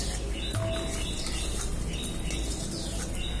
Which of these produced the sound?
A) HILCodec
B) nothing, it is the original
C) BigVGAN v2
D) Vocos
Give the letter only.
B